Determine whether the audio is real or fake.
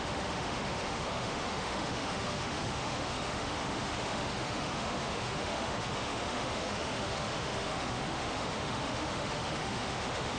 fake